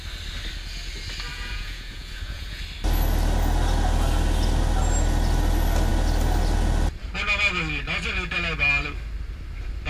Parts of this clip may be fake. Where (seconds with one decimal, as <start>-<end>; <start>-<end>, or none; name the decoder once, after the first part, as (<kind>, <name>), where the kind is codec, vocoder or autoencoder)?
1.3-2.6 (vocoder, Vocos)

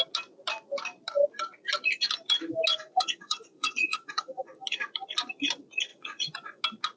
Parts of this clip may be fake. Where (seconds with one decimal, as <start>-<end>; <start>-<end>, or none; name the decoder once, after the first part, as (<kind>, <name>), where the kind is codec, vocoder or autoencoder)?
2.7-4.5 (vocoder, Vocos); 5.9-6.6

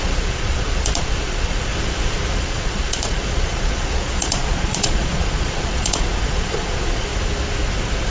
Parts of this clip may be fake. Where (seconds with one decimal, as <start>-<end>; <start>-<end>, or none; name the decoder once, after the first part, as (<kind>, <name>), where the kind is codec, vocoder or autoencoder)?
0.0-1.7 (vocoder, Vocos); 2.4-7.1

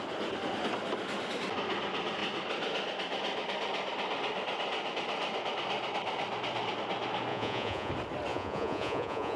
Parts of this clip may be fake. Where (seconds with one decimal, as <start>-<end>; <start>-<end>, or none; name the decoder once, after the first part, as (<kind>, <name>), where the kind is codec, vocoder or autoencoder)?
7.3-7.9 (vocoder, Vocos); 8.3-9.4